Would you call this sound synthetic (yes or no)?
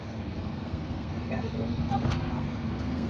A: yes